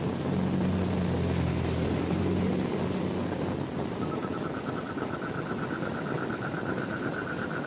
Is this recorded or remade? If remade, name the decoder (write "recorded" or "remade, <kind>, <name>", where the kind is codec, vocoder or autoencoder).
recorded